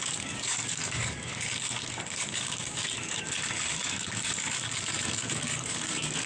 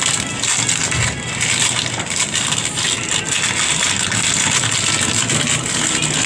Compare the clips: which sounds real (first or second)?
second